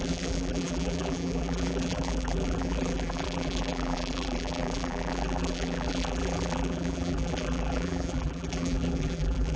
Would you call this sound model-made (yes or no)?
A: yes